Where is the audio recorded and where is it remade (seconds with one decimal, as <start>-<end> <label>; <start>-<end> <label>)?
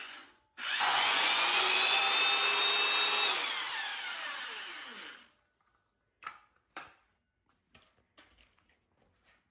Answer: 0.0-2.0 remade; 2.0-9.5 recorded